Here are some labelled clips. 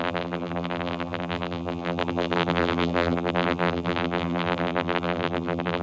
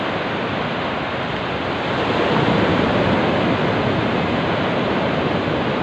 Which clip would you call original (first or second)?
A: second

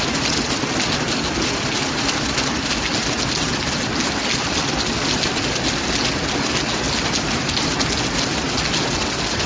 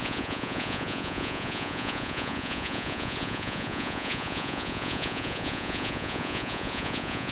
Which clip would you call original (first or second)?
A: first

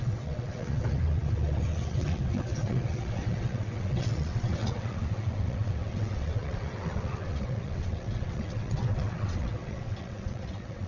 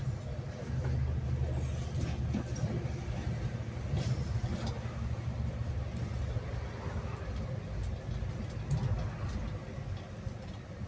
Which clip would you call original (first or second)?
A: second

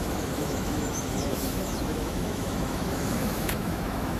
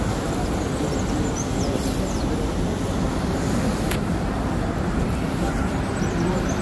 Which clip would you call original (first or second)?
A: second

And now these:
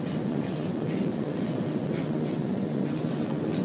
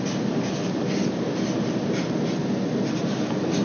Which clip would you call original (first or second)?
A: second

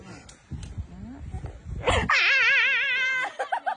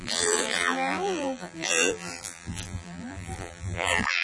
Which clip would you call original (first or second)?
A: first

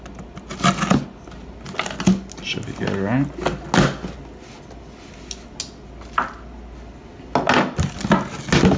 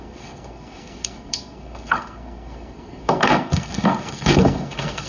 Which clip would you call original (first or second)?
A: first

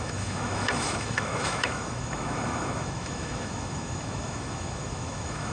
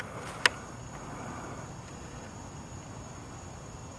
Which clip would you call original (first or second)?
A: second